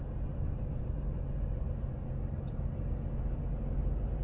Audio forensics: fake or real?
fake